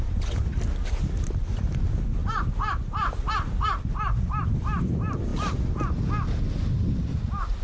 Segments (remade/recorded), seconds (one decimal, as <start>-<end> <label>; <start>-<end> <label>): 0.0-7.6 recorded

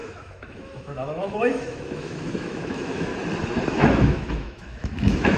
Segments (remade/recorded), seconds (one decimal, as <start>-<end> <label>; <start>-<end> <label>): 0.0-3.1 remade; 3.1-3.7 recorded; 3.7-5.4 remade

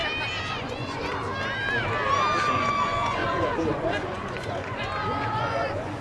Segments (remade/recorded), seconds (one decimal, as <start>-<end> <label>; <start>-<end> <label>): 0.0-0.5 recorded; 0.5-1.2 remade; 1.2-2.5 recorded; 2.5-6.0 remade

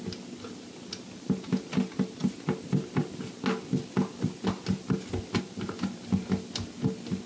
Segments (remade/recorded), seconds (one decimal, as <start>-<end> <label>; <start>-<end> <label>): 0.0-7.3 recorded

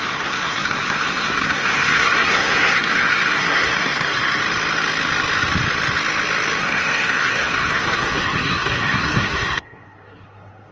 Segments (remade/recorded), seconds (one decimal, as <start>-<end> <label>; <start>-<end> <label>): 0.0-4.4 remade; 4.4-6.6 recorded; 6.6-10.7 remade

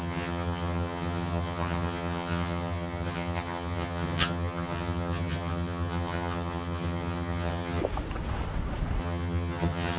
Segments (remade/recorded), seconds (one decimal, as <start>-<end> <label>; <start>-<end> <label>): 0.0-7.8 remade; 7.8-9.0 recorded; 9.0-10.0 remade

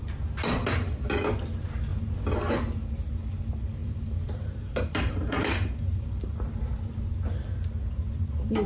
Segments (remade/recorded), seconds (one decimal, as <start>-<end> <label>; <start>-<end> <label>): 0.0-3.8 recorded; 3.8-6.6 remade; 6.6-8.7 recorded